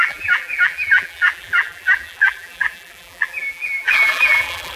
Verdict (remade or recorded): remade